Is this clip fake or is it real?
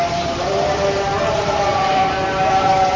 fake